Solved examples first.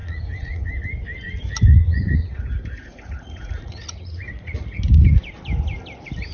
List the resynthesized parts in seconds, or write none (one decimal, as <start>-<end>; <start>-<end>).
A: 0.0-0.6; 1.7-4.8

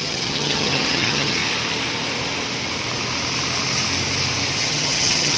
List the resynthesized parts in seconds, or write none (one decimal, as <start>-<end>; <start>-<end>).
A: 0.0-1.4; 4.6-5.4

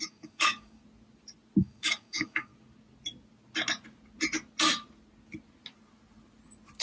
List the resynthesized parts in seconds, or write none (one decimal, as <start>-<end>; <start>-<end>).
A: 0.0-0.8; 1.6-2.5

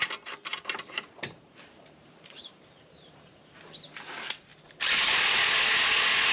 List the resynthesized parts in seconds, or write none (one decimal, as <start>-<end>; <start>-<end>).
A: 0.5-3.6

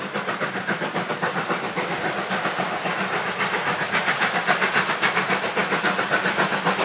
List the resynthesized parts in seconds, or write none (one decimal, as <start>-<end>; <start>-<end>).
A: none

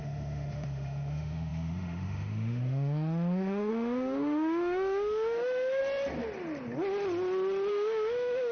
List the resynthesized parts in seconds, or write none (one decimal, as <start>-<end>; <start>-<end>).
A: 0.0-5.8; 7.7-8.5